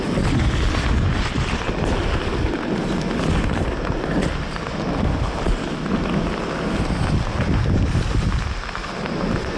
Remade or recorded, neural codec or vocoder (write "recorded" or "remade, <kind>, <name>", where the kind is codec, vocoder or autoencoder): recorded